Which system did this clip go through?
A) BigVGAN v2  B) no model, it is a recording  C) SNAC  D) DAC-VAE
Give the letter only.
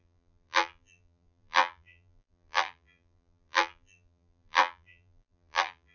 A